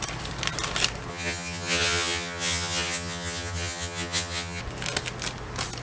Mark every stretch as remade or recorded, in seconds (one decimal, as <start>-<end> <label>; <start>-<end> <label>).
0.0-1.1 recorded; 1.1-4.6 remade; 4.6-5.8 recorded